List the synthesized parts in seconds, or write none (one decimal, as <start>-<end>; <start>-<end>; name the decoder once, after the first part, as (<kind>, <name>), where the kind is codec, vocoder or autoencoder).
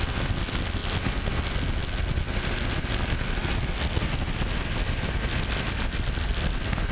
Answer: none